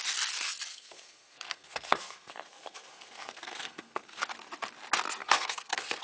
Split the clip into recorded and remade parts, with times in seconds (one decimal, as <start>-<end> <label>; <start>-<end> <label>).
0.0-0.7 recorded; 0.7-4.2 remade; 4.2-5.2 recorded; 5.2-6.0 remade